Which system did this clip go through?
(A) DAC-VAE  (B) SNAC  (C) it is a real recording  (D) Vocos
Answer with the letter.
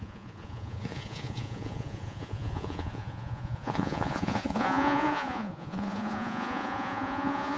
D